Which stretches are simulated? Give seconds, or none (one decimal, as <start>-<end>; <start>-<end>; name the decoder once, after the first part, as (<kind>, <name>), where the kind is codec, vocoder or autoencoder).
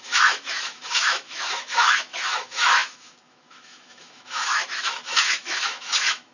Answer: 0.0-6.3 (autoencoder, DAC-VAE)